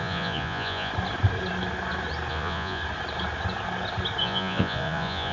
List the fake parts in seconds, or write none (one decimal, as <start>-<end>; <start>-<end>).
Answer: 0.0-0.9; 2.3-2.8; 4.2-5.3